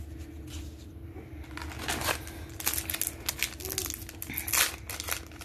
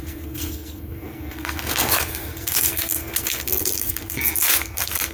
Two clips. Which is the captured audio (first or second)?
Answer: first